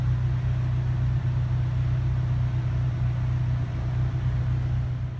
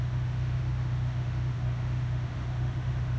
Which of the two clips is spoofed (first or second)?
second